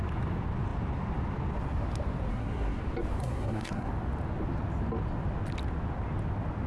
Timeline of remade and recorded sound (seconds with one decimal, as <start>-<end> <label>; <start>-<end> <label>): 0.0-2.3 recorded; 2.3-2.8 remade; 2.8-3.2 recorded; 3.2-3.9 remade; 3.9-6.7 recorded